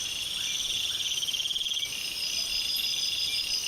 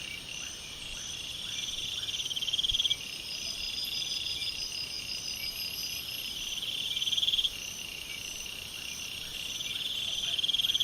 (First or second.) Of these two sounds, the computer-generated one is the second